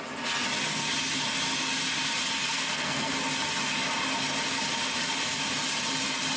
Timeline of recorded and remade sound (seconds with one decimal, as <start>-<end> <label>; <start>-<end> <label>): 0.0-2.5 recorded; 2.5-3.1 remade; 3.1-6.4 recorded